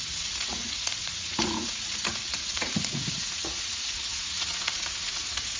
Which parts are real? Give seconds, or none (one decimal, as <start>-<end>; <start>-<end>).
none